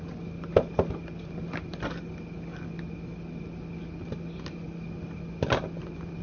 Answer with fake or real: real